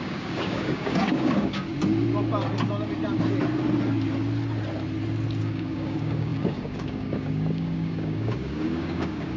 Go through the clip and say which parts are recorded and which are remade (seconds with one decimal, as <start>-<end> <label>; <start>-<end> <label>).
0.0-1.7 remade; 1.7-5.4 recorded; 5.4-9.4 remade